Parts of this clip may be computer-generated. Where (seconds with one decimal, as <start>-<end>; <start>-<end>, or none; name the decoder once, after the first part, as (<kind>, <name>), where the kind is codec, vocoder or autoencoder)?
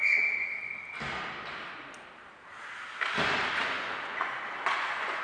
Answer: 0.0-0.4 (vocoder, Vocos); 3.5-5.2